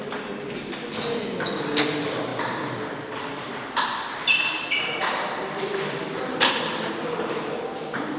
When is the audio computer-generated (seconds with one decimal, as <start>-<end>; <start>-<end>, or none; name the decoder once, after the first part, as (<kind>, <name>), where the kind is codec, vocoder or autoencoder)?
2.3-6.9 (vocoder, BigVGAN v2)